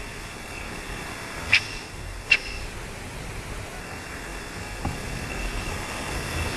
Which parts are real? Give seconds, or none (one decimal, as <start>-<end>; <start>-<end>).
2.6-3.8